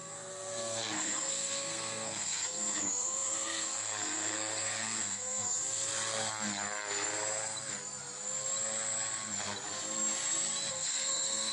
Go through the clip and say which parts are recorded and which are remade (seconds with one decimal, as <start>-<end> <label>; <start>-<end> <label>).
0.0-5.9 remade; 5.9-10.7 recorded; 10.7-11.5 remade